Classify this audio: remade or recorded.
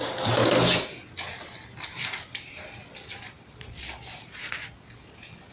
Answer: recorded